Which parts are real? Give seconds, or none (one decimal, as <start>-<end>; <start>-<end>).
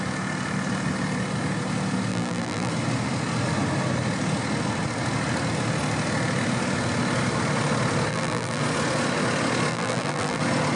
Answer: 0.0-2.1; 2.7-8.1; 8.6-9.7; 10.4-10.8